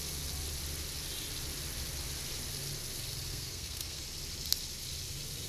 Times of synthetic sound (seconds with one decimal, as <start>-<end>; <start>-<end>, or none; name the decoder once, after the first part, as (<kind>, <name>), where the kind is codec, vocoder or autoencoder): 3.3-4.0 (codec, SNAC)